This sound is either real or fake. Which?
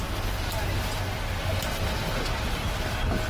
real